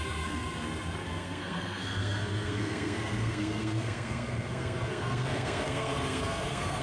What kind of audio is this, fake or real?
fake